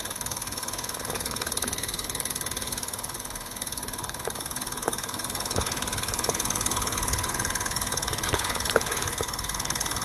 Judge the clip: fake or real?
fake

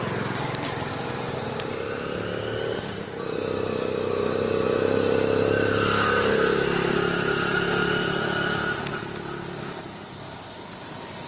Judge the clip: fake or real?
real